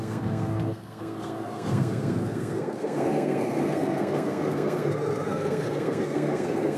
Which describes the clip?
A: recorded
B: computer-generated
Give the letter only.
B